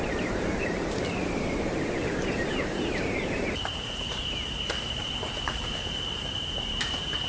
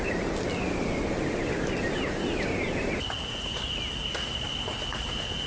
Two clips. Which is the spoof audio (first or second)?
first